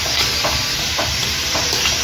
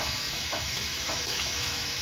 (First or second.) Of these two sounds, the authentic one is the first